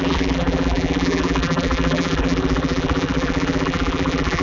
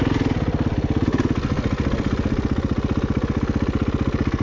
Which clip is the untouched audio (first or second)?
second